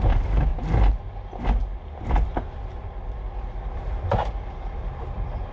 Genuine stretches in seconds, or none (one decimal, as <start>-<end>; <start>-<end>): 0.5-1.4